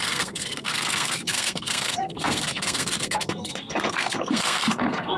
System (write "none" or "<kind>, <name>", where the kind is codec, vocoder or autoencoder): codec, SNAC